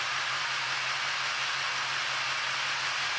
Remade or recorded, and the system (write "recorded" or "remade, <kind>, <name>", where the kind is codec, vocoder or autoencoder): recorded